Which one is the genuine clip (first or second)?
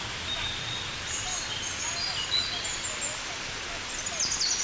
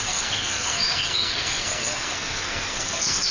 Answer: first